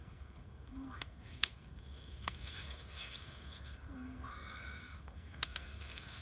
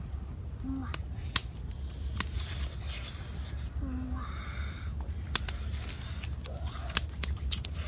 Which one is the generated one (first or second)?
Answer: first